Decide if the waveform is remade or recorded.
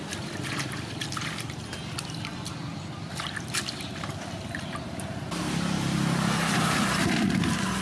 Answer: remade